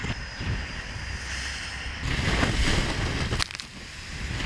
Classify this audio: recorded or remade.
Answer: recorded